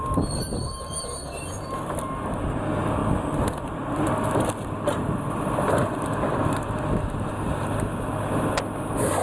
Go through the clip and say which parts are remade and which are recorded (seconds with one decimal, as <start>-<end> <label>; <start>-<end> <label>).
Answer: 0.0-9.2 recorded